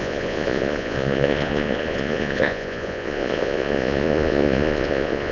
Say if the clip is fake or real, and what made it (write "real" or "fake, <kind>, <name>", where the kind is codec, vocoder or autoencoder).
fake, vocoder, Vocos